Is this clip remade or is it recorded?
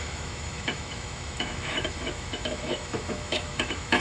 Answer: remade